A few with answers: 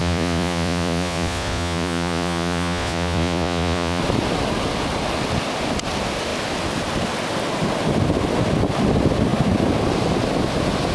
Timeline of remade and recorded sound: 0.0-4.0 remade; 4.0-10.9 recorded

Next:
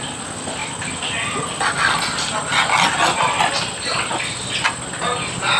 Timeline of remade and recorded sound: 0.0-5.6 recorded

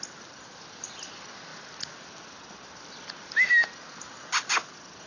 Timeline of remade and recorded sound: 0.0-5.1 recorded